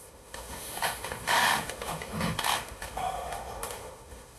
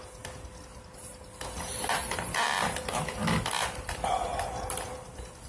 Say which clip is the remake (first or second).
first